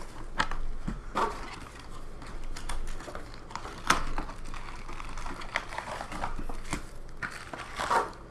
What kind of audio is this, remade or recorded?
recorded